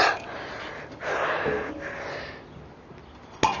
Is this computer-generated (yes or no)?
no